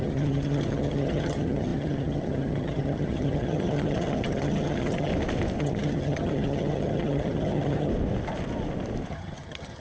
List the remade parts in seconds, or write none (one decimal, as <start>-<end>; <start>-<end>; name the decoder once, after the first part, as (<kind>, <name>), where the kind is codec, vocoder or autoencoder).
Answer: 0.0-5.1 (vocoder, HiFi-GAN); 5.6-7.9; 9.1-9.8